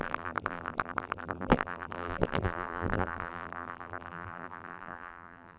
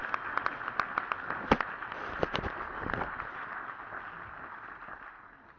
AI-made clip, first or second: first